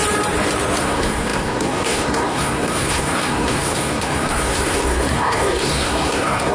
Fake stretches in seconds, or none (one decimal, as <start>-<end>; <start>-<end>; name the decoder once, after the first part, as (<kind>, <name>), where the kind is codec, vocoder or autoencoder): 0.8-6.5 (codec, SNAC)